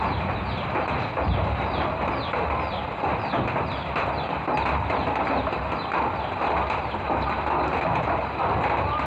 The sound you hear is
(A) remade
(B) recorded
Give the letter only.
B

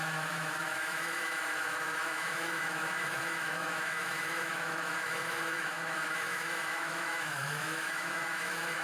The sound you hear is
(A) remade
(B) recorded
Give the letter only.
A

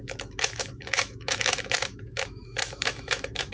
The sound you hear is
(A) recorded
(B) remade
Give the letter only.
B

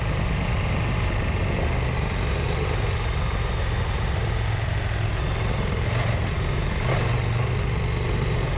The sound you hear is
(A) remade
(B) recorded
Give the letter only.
B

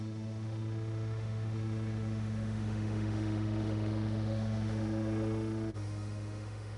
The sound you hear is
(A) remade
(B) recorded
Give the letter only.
A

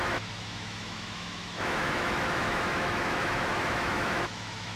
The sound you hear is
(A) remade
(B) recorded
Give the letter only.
A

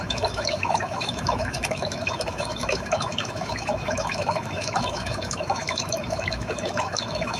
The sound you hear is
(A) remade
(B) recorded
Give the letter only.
A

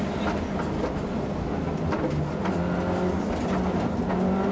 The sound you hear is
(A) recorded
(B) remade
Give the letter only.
A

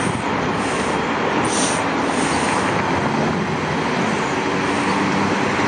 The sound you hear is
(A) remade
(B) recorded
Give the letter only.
B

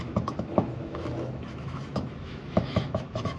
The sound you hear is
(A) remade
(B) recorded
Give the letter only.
A